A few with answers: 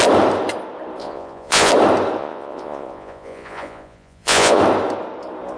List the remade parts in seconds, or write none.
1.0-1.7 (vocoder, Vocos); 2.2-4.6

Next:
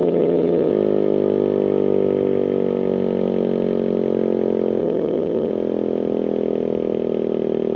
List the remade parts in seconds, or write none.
0.0-0.7 (vocoder, HiFi-GAN); 4.8-5.5

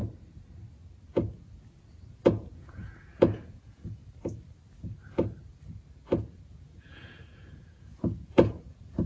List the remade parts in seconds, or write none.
2.1-4.0 (vocoder, Vocos); 6.5-9.1

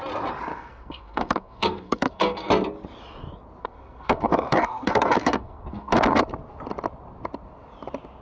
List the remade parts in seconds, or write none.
0.5-2.5 (codec, SNAC); 3.6-6.2

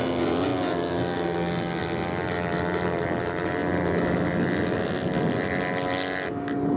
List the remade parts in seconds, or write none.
none